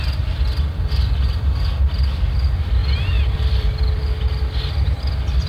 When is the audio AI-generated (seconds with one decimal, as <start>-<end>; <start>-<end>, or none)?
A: 2.8-4.0